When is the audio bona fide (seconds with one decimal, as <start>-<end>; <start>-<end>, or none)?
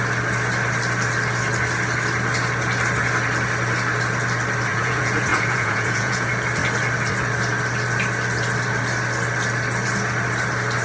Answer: 0.0-4.7; 6.3-10.8